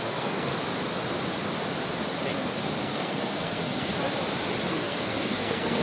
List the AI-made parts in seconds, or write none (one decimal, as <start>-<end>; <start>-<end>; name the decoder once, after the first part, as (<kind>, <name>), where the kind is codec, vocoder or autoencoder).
0.0-0.5 (codec, SNAC); 2.8-3.9; 4.7-5.8